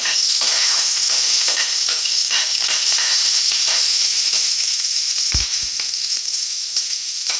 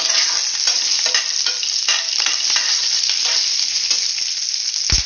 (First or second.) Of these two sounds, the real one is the second